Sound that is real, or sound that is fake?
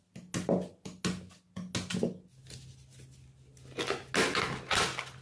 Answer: real